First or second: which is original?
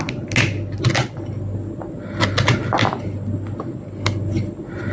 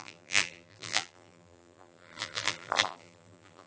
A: first